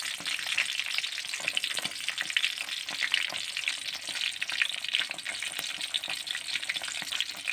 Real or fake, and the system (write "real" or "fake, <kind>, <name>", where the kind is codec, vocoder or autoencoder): real